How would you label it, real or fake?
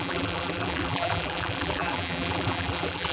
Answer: fake